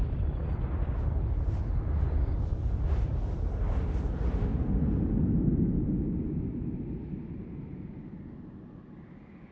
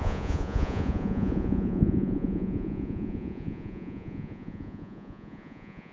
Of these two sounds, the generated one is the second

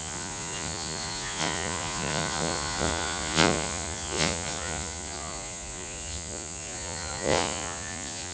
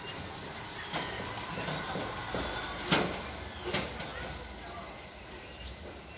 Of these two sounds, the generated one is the first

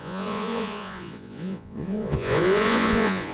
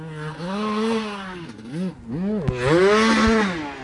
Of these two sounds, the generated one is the first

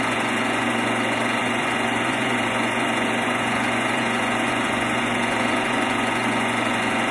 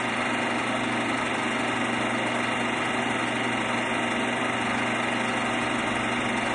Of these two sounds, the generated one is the first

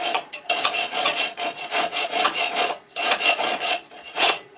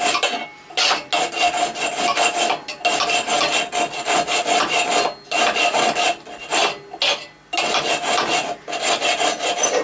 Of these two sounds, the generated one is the first